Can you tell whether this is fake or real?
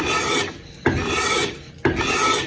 real